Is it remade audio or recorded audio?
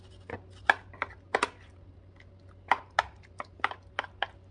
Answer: recorded